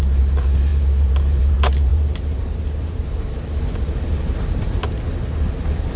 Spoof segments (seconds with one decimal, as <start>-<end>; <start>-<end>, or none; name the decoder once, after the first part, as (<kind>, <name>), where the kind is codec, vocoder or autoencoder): 0.0-4.8 (vocoder, BigVGAN v2); 5.5-6.0